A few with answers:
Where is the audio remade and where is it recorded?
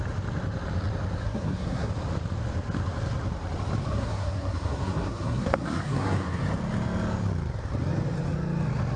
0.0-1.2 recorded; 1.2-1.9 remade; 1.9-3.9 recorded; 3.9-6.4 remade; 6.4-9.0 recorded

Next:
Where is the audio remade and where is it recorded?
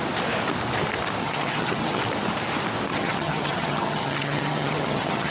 0.0-1.2 recorded; 1.2-2.0 remade; 2.0-2.9 recorded; 2.9-5.3 remade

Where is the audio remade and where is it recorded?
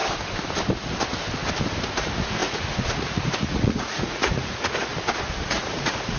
0.0-2.0 recorded; 2.0-4.9 remade; 4.9-5.4 recorded; 5.4-6.2 remade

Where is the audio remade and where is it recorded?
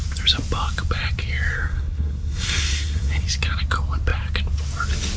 0.0-1.5 recorded; 1.5-3.2 remade; 3.2-5.2 recorded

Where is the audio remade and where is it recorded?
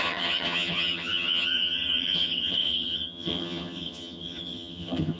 0.0-5.2 remade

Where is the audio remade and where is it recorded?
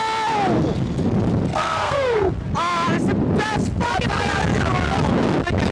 0.0-1.5 recorded; 1.5-2.3 remade; 2.3-5.7 recorded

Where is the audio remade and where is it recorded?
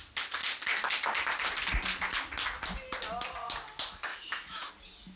0.0-4.1 recorded; 4.1-4.7 remade; 4.7-5.2 recorded